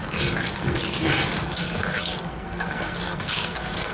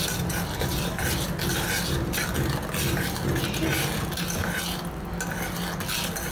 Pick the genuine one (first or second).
second